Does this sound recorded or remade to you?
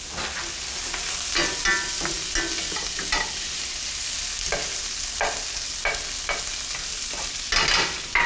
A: recorded